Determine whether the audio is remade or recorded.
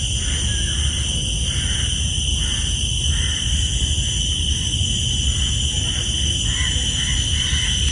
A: recorded